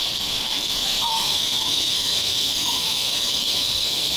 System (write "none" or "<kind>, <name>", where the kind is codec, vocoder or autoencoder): codec, SNAC